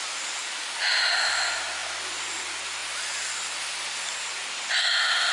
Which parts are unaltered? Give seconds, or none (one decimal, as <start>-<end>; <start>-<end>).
0.0-5.3